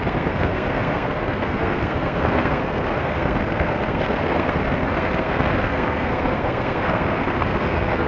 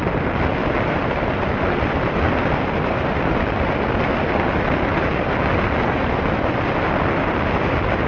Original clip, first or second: second